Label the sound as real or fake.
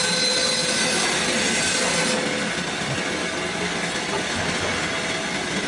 real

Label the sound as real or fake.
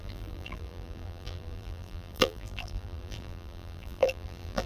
fake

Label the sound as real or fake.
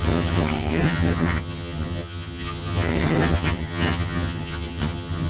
fake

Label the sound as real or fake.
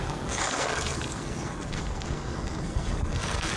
fake